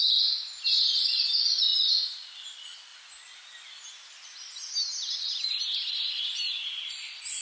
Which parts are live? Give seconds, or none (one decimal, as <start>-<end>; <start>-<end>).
0.0-7.4